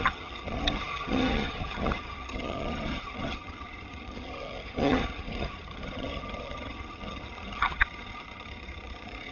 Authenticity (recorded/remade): remade